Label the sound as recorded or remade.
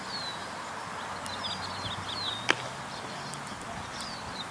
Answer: recorded